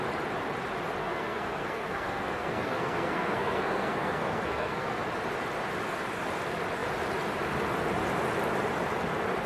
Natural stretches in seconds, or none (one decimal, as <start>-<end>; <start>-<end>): 0.0-1.0; 5.0-9.5